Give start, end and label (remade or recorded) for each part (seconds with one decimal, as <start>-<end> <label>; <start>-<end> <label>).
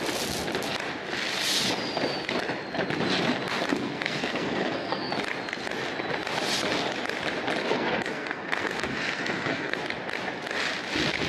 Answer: 0.0-3.7 recorded; 3.7-5.1 remade; 5.1-7.6 recorded; 7.6-9.8 remade; 9.8-11.3 recorded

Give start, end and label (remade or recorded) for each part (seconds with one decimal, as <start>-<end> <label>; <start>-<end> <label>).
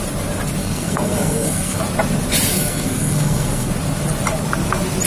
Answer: 0.0-0.6 recorded; 0.6-1.8 remade; 1.8-2.5 recorded; 2.5-3.7 remade; 3.7-5.1 recorded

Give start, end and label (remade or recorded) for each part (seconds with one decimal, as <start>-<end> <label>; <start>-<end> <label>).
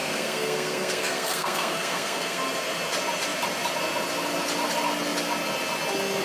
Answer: 0.0-2.4 remade; 2.4-6.2 recorded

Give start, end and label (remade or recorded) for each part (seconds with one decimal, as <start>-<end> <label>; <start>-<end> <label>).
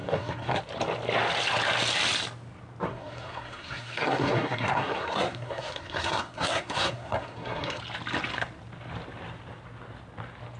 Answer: 0.0-0.6 remade; 0.6-2.9 recorded; 2.9-7.8 remade; 7.8-10.6 recorded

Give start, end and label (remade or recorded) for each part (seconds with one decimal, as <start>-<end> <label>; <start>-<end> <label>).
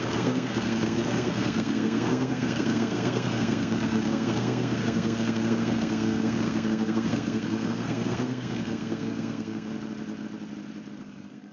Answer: 0.0-9.7 remade; 9.7-11.0 recorded; 11.0-11.5 remade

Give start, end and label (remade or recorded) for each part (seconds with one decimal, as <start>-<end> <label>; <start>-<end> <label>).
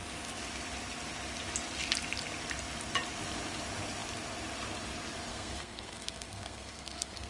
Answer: 0.0-5.3 recorded; 5.3-7.3 remade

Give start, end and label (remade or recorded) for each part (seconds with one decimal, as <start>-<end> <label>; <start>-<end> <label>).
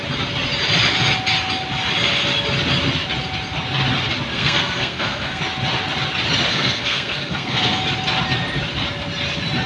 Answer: 0.0-4.3 recorded; 4.3-5.4 remade; 5.4-6.5 recorded; 6.5-7.8 remade; 7.8-9.7 recorded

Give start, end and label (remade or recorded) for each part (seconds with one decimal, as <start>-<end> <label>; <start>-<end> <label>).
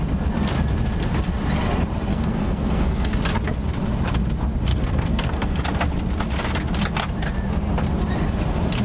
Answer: 0.0-2.1 recorded; 2.1-3.2 remade; 3.2-4.7 recorded; 4.7-5.6 remade; 5.6-8.8 recorded